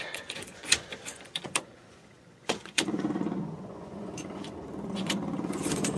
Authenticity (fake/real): fake